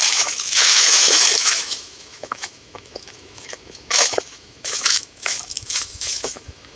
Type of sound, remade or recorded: remade